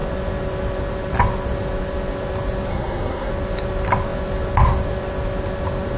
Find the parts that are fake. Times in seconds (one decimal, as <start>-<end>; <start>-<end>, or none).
2.7-3.3